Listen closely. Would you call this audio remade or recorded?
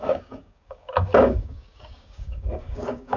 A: remade